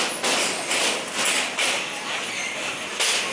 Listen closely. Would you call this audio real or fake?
real